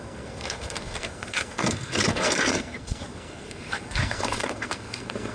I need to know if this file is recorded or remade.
remade